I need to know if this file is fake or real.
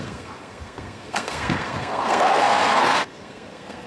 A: fake